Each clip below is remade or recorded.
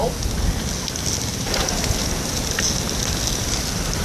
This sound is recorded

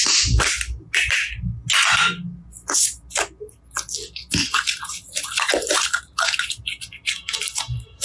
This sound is recorded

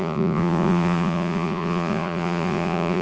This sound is remade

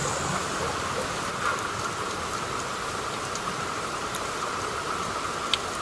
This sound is recorded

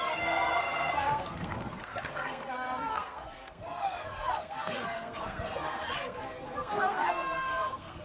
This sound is remade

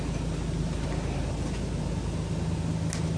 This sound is recorded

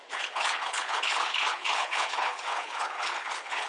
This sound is remade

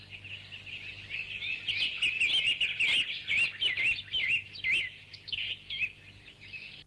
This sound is recorded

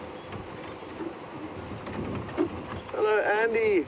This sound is recorded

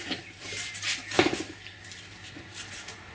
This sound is recorded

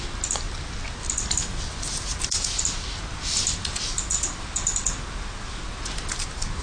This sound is recorded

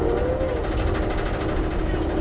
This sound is recorded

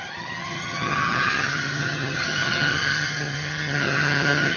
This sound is remade